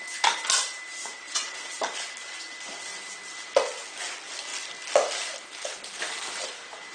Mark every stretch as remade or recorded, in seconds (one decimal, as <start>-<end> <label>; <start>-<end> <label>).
0.0-1.0 recorded; 1.0-1.8 remade; 1.8-6.9 recorded